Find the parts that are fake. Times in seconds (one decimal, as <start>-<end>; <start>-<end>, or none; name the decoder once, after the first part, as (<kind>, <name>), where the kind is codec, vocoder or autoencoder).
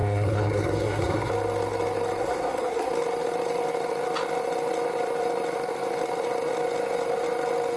0.0-1.3 (codec, SNAC); 2.2-2.9